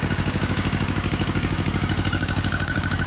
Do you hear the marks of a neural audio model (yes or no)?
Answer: yes